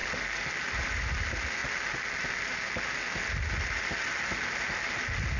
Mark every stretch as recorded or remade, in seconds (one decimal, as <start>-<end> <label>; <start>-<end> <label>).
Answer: 0.0-5.4 recorded

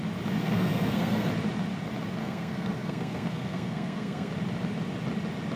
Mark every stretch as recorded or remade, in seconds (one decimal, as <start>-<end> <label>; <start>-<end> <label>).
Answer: 0.0-0.4 recorded; 0.4-1.3 remade; 1.3-2.2 recorded; 2.2-4.3 remade; 4.3-5.6 recorded

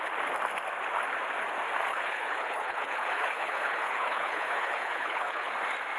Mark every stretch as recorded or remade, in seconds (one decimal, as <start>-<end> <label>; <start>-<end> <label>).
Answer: 0.0-1.9 recorded; 1.9-5.5 remade; 5.5-6.0 recorded

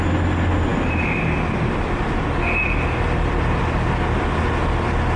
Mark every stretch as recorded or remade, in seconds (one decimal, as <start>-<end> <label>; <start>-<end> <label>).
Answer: 0.0-5.2 recorded

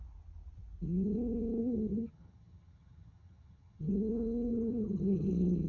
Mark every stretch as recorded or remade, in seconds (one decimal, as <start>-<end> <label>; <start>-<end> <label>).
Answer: 0.0-1.6 recorded; 1.6-3.9 remade; 3.9-4.5 recorded; 4.5-5.3 remade; 5.3-5.7 recorded

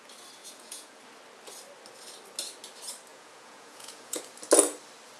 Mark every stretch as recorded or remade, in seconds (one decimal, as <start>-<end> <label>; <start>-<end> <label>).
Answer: 0.0-0.4 recorded; 0.4-1.0 remade; 1.0-3.1 recorded; 3.1-4.2 remade; 4.2-5.2 recorded

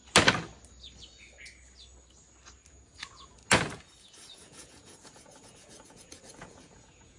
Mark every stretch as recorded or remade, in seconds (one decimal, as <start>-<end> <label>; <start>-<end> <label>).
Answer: 0.0-2.7 recorded; 2.7-3.4 remade; 3.4-4.0 recorded; 4.0-7.2 remade